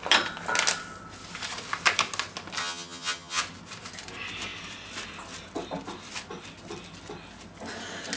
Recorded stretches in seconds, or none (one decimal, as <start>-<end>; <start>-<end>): 0.0-2.6; 3.4-8.2

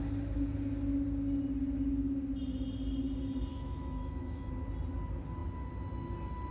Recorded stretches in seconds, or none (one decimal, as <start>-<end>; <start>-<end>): 0.0-3.5; 4.5-6.5

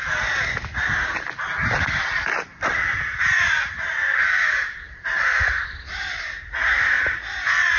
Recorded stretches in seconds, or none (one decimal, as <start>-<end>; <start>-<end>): 0.0-5.4; 6.0-7.8

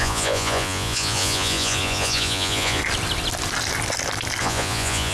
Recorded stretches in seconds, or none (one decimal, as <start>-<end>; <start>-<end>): 2.8-4.4

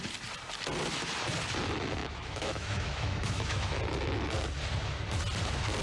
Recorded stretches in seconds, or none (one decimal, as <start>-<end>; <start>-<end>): 0.0-2.0; 3.8-5.8

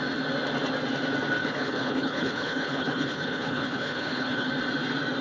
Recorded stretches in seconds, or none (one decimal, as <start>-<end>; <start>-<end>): 0.0-1.4; 4.5-5.2

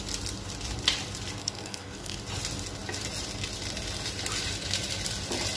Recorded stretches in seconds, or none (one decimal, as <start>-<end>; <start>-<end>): 0.0-1.4; 2.2-5.6

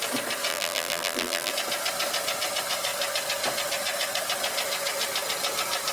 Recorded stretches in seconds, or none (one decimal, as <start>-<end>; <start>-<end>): 0.0-0.5; 1.5-5.9